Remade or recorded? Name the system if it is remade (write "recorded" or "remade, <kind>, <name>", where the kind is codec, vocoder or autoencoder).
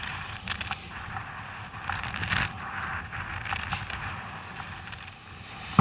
recorded